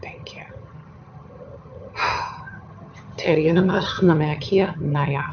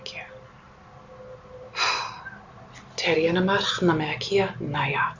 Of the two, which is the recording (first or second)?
second